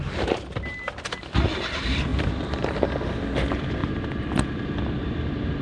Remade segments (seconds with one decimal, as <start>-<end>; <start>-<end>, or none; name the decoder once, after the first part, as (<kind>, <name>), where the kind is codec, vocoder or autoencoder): none